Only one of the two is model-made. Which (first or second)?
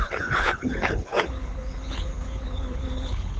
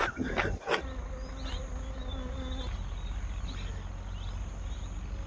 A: first